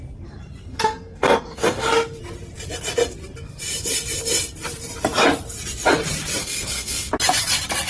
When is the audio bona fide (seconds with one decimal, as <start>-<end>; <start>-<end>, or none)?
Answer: 0.0-0.6; 2.2-6.4; 7.1-7.9